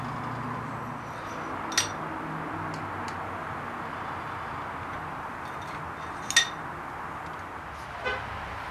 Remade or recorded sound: recorded